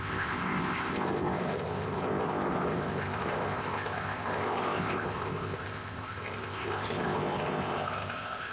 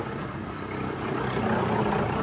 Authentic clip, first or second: second